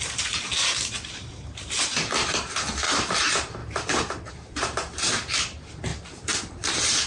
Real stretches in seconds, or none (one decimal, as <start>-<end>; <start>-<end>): 3.6-4.3; 5.9-6.5